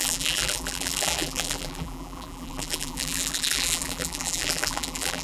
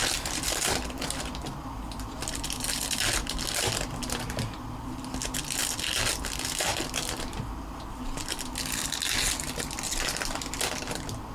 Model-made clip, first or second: first